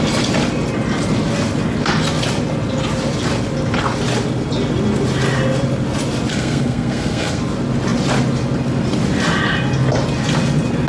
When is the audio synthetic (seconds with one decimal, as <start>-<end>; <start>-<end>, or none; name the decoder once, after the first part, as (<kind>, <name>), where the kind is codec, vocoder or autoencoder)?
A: 6.3-7.4 (codec, SNAC)